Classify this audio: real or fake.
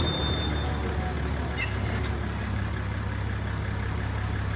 real